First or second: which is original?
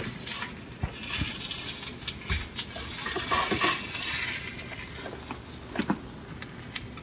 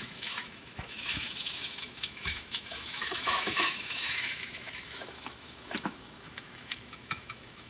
first